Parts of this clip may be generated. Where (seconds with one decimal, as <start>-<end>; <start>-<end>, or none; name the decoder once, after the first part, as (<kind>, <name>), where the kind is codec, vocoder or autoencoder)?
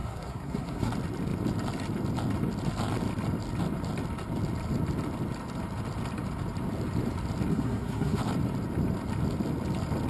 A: 0.0-0.9 (codec, SNAC); 7.5-8.2